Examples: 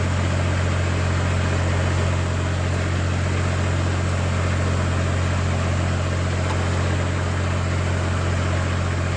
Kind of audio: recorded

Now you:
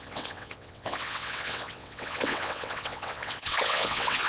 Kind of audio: remade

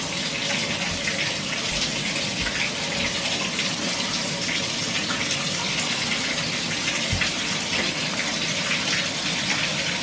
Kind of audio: recorded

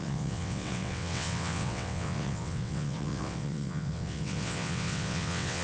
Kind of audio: remade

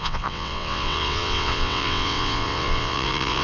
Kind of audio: remade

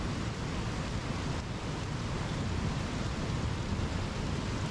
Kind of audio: recorded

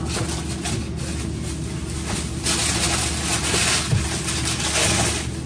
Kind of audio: recorded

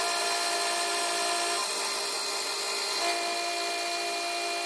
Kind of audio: recorded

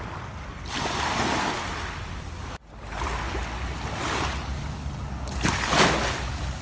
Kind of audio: recorded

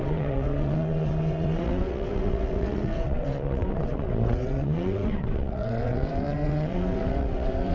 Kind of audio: remade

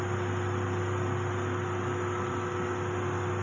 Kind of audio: recorded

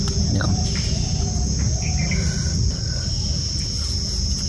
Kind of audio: recorded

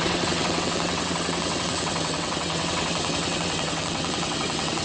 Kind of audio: remade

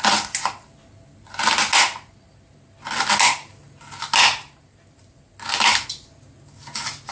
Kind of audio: recorded